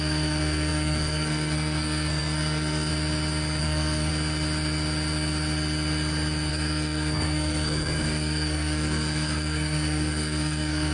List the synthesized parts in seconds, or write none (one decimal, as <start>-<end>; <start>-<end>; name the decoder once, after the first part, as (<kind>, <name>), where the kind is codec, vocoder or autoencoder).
0.0-2.9 (codec, SNAC); 3.6-4.1; 6.5-10.9